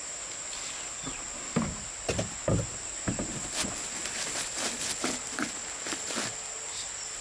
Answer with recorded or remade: recorded